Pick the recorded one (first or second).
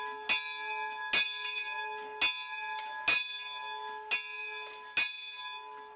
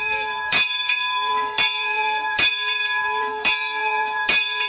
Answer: first